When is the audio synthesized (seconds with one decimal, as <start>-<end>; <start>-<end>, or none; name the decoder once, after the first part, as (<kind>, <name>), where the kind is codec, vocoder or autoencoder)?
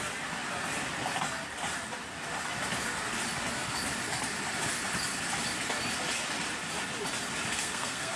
7.5-8.2 (codec, SNAC)